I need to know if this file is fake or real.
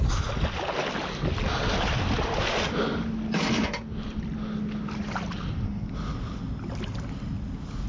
real